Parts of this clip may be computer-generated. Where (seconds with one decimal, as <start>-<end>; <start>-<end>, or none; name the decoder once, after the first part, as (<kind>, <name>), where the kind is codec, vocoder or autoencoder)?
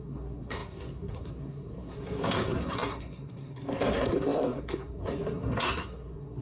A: 0.0-6.4 (codec, SNAC)